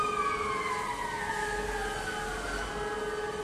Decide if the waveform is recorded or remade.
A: recorded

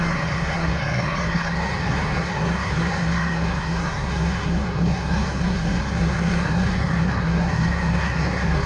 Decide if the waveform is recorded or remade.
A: remade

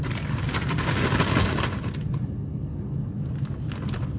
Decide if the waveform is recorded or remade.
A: recorded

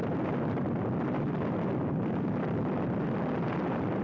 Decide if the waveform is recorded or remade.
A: remade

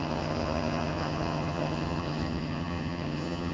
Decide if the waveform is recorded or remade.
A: remade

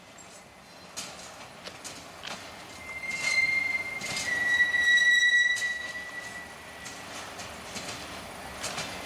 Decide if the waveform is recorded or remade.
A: recorded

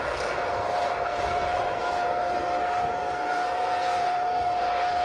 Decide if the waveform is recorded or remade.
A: remade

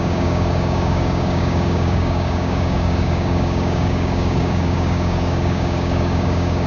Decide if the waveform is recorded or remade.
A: remade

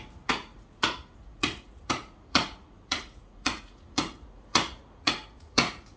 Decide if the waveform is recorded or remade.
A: remade